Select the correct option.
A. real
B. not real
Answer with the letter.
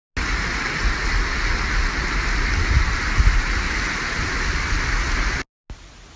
A